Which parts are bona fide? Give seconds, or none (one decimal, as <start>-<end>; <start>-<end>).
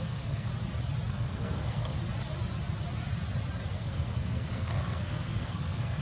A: 0.5-1.1; 2.0-3.7